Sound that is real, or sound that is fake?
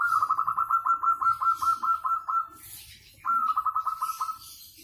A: real